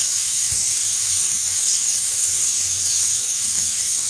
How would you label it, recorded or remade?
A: remade